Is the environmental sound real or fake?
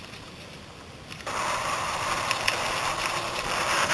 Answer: real